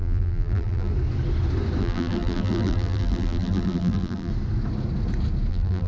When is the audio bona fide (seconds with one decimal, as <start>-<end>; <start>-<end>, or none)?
0.9-1.8; 4.3-5.5